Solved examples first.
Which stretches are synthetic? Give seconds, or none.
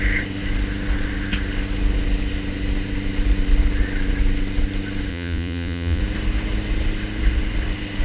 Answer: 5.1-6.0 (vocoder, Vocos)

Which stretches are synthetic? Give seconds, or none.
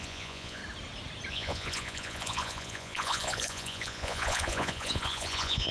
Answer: 0.0-0.6 (vocoder, Vocos); 1.3-5.7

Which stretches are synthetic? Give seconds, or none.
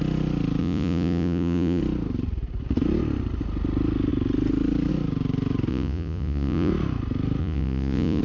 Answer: 0.6-1.8 (vocoder, Vocos); 5.7-6.7; 7.4-8.2